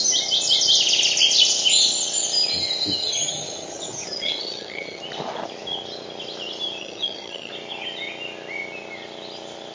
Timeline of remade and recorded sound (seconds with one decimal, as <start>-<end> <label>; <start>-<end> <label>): 0.0-3.0 recorded; 3.0-5.0 remade; 5.0-6.8 recorded; 6.8-7.5 remade; 7.5-9.7 recorded